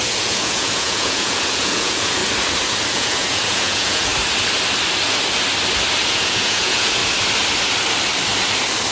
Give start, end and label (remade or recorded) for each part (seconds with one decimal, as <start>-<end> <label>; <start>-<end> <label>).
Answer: 0.0-2.2 remade; 2.2-2.9 recorded; 2.9-4.1 remade; 4.1-6.1 recorded; 6.1-7.0 remade; 7.0-8.9 recorded